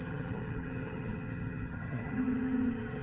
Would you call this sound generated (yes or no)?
yes